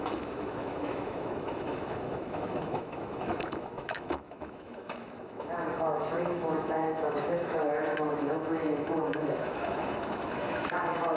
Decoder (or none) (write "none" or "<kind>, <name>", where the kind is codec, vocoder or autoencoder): autoencoder, DAC-VAE